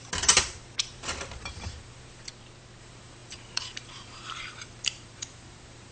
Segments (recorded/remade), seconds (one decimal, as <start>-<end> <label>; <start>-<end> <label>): 0.0-2.3 remade; 2.3-2.8 recorded; 2.8-5.9 remade